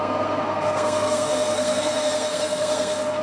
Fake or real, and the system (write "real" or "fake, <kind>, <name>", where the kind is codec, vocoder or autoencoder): fake, codec, SNAC